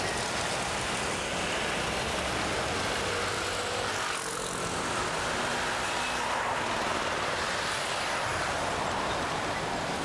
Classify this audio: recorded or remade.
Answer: recorded